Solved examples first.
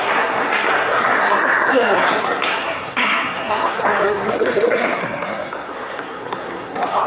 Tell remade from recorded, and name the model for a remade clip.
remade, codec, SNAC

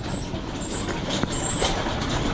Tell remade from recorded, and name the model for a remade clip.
recorded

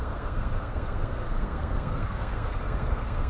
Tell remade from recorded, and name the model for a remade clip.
remade, codec, SNAC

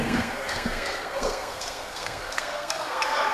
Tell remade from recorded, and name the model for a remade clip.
remade, codec, SNAC